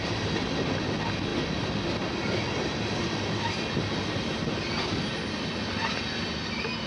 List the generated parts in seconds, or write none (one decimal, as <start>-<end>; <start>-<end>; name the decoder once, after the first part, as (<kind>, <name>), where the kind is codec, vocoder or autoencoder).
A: none